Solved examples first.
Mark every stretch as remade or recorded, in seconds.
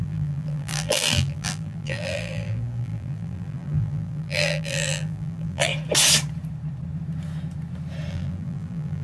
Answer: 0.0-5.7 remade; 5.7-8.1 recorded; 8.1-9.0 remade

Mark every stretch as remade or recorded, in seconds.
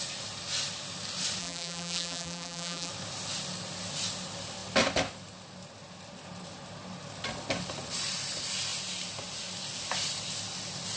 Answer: 0.0-1.4 recorded; 1.4-2.9 remade; 2.9-11.0 recorded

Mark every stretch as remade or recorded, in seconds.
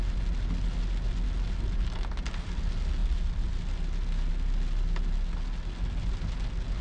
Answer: 0.0-6.8 recorded